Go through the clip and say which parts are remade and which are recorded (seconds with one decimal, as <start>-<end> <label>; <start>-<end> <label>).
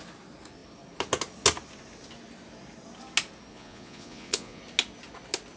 0.0-3.5 recorded; 3.5-4.6 remade; 4.6-5.6 recorded